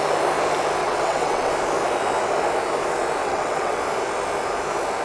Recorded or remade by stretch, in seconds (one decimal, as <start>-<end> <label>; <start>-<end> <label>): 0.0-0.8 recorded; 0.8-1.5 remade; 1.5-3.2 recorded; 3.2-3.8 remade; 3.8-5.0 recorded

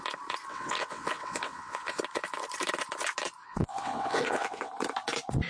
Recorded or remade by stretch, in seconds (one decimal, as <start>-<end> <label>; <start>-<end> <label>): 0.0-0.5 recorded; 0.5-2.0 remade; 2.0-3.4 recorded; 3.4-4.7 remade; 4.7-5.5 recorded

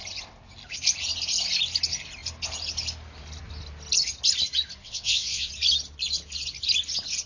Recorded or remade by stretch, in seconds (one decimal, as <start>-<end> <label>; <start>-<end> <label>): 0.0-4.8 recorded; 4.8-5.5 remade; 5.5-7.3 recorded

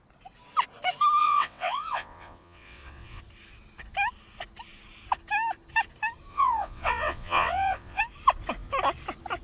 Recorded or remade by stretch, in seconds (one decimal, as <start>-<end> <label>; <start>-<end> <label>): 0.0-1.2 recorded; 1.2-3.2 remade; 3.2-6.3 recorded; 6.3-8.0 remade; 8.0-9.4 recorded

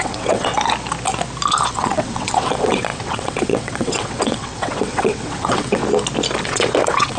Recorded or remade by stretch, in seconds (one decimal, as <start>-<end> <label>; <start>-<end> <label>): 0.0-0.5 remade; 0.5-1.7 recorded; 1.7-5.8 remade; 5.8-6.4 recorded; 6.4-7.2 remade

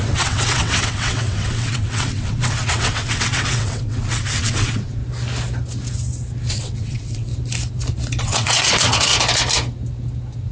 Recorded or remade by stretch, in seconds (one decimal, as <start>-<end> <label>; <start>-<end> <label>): 0.0-5.0 remade; 5.0-6.5 recorded; 6.5-7.3 remade; 7.3-8.2 recorded; 8.2-9.1 remade; 9.1-10.5 recorded

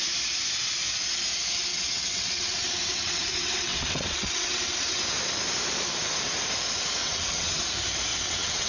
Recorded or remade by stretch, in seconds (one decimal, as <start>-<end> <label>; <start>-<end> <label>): 0.0-1.7 recorded; 1.7-5.0 remade; 5.0-7.0 recorded; 7.0-7.6 remade; 7.6-8.1 recorded; 8.1-8.7 remade

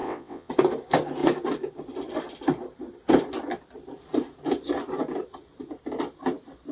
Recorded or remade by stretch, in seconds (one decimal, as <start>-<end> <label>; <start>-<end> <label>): 0.0-0.5 remade; 0.5-6.7 recorded